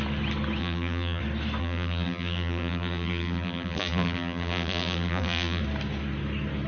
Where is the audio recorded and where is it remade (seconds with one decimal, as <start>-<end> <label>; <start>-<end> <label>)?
0.0-0.6 recorded; 0.6-1.2 remade; 1.2-1.6 recorded; 1.6-5.6 remade; 5.6-6.7 recorded